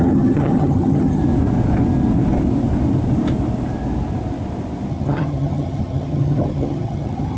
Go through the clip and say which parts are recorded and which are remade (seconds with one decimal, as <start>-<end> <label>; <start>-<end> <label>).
0.0-1.2 remade; 1.2-4.9 recorded; 4.9-7.4 remade